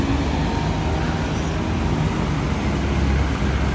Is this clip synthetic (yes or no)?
no